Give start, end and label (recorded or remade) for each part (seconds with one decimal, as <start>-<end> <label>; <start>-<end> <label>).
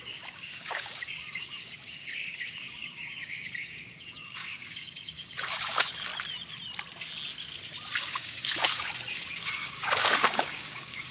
0.0-6.1 remade; 6.1-8.0 recorded; 8.0-8.9 remade; 8.9-9.4 recorded; 9.4-11.1 remade